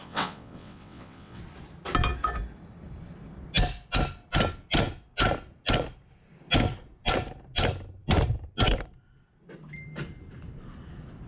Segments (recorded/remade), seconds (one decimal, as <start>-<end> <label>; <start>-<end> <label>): 0.0-1.4 remade; 1.4-11.3 recorded